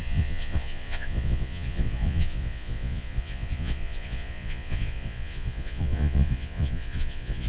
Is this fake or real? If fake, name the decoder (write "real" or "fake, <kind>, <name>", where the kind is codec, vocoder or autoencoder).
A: fake, vocoder, Vocos